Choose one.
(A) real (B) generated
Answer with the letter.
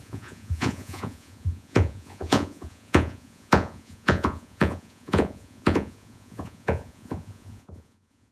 B